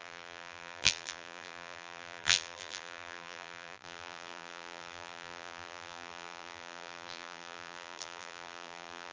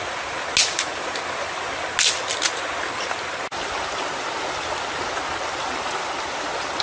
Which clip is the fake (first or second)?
first